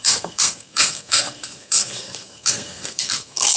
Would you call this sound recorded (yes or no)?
no